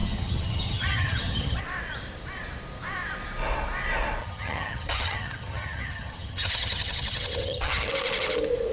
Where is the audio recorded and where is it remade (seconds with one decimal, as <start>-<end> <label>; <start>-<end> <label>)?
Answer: 0.0-1.6 remade; 1.6-4.2 recorded; 4.2-7.9 remade; 7.9-8.7 recorded